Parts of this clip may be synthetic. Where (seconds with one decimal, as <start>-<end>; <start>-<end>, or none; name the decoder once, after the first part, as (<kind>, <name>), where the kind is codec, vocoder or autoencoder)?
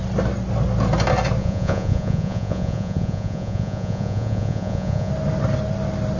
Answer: 1.4-5.1 (vocoder, Vocos)